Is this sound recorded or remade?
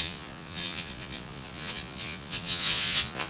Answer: remade